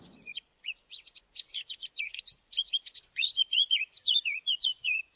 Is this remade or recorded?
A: remade